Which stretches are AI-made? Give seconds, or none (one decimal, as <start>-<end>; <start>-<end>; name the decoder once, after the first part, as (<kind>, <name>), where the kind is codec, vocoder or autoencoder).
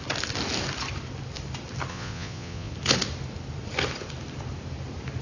1.9-2.7 (vocoder, Vocos)